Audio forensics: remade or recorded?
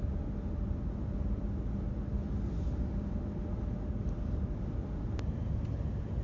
recorded